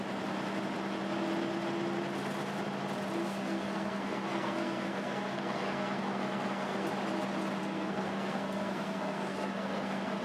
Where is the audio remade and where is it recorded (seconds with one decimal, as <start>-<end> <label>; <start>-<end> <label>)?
0.0-3.2 recorded; 3.2-6.9 remade; 6.9-7.6 recorded; 7.6-10.2 remade